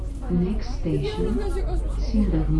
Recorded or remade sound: recorded